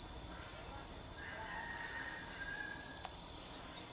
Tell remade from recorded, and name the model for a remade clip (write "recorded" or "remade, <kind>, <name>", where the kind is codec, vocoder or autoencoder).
recorded